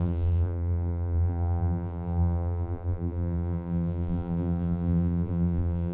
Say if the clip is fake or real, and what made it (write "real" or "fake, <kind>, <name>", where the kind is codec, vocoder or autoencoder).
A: fake, vocoder, BigVGAN v2